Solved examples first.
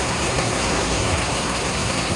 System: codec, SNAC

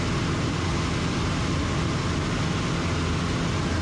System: none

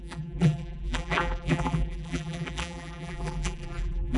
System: vocoder, BigVGAN v2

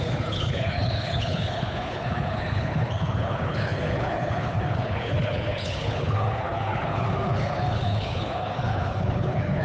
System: codec, HILCodec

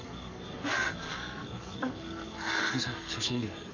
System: codec, SNAC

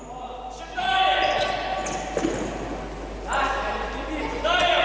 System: none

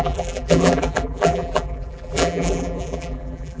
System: vocoder, BigVGAN v2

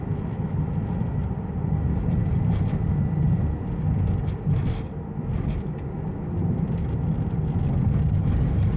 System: none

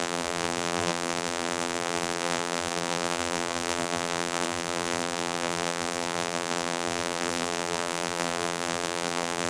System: vocoder, BigVGAN v2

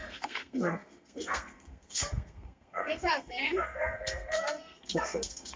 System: codec, SNAC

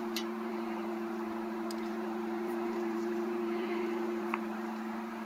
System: vocoder, BigVGAN v2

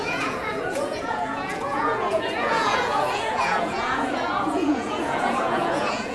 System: vocoder, Vocos